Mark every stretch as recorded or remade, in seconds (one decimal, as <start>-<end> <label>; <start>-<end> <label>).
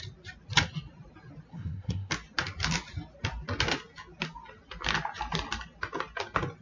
0.0-1.5 recorded; 1.5-2.1 remade; 2.1-6.6 recorded